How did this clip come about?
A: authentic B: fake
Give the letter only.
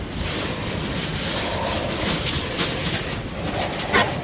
A